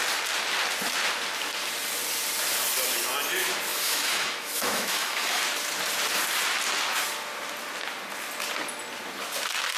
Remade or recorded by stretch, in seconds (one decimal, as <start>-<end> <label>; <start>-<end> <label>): 0.0-3.7 recorded; 3.7-5.4 remade; 5.4-9.8 recorded